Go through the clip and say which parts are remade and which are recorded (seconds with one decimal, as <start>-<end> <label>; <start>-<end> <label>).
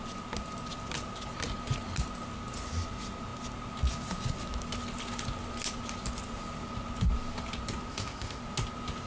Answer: 0.0-7.9 recorded; 7.9-8.4 remade; 8.4-9.1 recorded